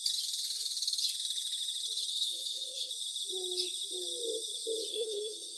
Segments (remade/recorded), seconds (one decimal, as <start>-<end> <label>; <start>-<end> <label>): 0.0-2.1 recorded; 2.1-2.9 remade; 2.9-4.9 recorded; 4.9-5.6 remade